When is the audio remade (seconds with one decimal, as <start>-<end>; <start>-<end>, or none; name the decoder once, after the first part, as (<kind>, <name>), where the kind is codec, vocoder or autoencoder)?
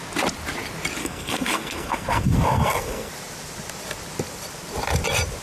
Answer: 1.0-3.1 (codec, SNAC)